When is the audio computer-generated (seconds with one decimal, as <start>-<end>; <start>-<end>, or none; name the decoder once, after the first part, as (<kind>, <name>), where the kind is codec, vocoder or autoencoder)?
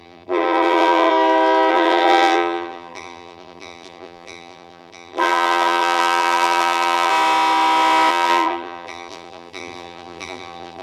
0.0-1.1 (vocoder, BigVGAN v2); 1.7-7.1; 8.1-10.8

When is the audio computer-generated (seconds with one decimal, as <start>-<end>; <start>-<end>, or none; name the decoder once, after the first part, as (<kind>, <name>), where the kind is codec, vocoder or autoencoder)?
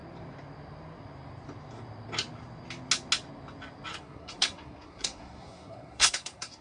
4.0-6.6 (codec, SNAC)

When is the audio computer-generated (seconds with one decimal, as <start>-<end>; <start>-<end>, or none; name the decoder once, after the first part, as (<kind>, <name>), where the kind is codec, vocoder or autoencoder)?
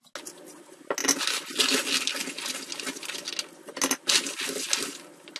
none